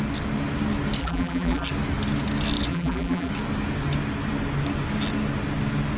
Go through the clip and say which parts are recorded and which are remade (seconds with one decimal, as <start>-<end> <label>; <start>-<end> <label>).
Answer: 0.0-1.0 recorded; 1.0-1.7 remade; 1.7-2.7 recorded; 2.7-3.3 remade; 3.3-6.0 recorded

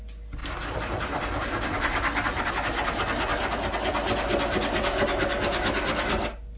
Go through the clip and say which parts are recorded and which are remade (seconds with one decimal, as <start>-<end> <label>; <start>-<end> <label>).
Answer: 0.0-0.4 recorded; 0.4-2.5 remade; 2.5-6.6 recorded

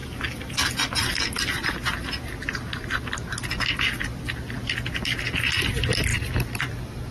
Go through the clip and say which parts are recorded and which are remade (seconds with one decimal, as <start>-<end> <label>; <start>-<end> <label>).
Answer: 0.0-6.1 recorded; 6.1-7.1 remade

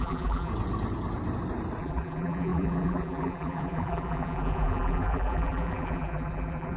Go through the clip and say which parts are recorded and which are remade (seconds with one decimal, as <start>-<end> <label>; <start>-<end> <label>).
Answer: 0.0-0.5 remade; 0.5-1.8 recorded; 1.8-6.8 remade

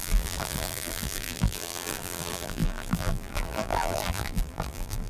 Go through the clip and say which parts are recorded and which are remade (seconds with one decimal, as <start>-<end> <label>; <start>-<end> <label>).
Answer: 0.0-5.1 remade

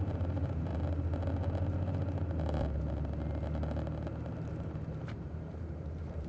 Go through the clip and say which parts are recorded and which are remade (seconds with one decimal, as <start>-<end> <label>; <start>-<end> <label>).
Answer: 0.0-0.7 remade; 0.7-4.5 recorded; 4.5-6.3 remade